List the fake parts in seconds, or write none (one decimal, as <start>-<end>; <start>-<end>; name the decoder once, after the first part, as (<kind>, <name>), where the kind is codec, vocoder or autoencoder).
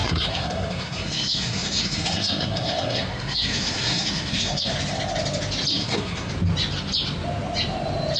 0.0-4.7 (codec, SNAC); 5.7-6.3